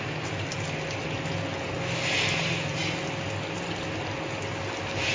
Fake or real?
real